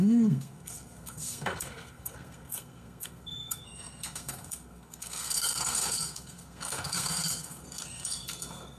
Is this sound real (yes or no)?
no